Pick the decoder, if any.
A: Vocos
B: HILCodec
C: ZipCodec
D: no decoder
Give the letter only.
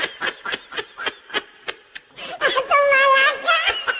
D